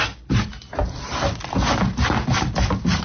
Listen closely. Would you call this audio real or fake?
real